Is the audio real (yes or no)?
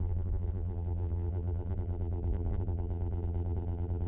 no